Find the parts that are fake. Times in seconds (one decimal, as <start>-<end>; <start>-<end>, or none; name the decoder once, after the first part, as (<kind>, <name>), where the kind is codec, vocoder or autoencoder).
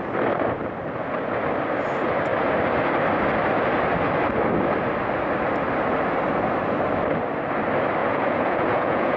8.0-9.2 (vocoder, Vocos)